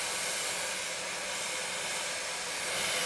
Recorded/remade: remade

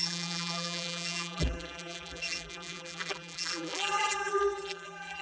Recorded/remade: remade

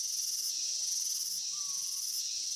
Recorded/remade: recorded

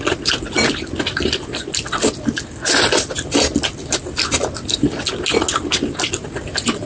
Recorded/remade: recorded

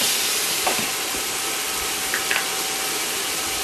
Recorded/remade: remade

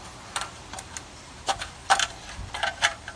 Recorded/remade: remade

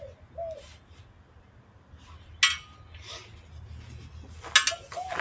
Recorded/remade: recorded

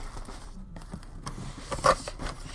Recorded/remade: remade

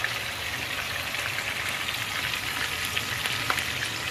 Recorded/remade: recorded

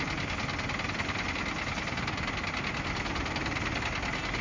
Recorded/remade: recorded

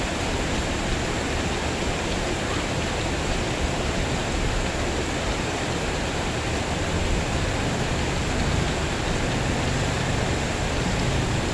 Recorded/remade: recorded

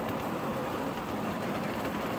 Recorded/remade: recorded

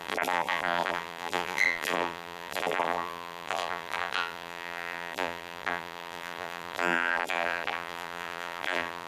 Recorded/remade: remade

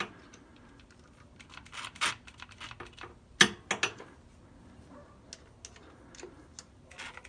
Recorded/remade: recorded